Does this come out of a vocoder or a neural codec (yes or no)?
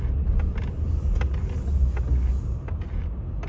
no